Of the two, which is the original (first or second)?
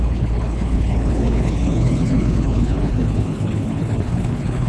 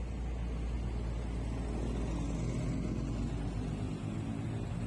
second